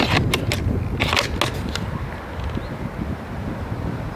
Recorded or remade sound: recorded